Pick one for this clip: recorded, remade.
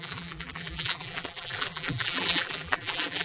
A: remade